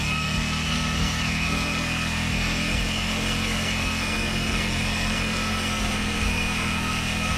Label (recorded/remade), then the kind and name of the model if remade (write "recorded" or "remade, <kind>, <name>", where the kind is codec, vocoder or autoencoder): remade, codec, SNAC